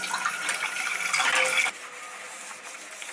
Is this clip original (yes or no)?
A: yes